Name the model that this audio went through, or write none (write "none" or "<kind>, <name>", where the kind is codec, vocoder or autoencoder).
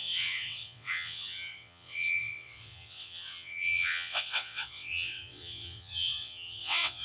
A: vocoder, WaveNeXt